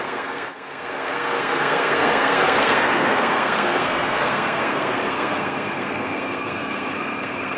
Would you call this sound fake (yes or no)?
yes